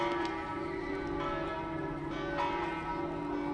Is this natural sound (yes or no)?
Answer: yes